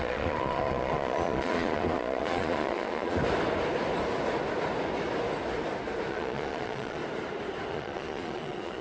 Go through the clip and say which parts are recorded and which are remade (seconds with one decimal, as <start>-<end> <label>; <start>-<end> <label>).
0.0-3.2 remade; 3.2-6.1 recorded; 6.1-7.0 remade; 7.0-7.7 recorded; 7.7-8.8 remade